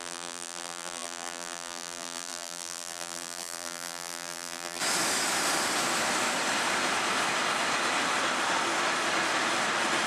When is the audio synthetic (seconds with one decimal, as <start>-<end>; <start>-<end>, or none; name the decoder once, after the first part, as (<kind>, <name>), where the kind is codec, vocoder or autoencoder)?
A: 0.0-4.8 (vocoder, BigVGAN v2)